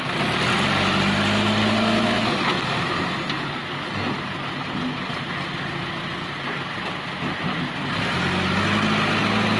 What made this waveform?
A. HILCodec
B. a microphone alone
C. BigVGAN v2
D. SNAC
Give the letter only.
B